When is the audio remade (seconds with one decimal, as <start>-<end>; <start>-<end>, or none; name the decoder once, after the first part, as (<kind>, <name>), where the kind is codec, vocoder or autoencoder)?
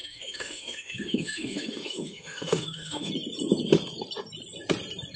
0.0-3.1 (autoencoder, DAC-VAE)